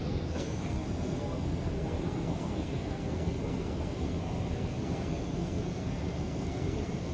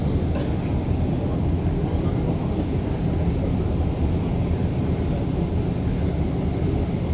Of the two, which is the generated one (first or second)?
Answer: first